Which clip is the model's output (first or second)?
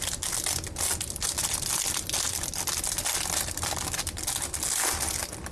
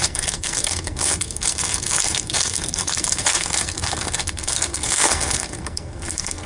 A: second